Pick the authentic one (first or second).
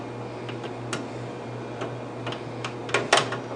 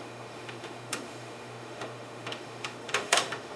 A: first